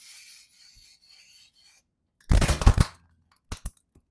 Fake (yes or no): no